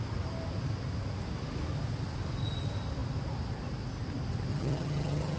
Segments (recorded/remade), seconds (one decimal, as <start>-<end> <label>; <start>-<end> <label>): 0.0-4.5 recorded; 4.5-5.4 remade